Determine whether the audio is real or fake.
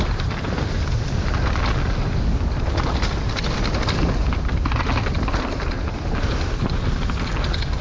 real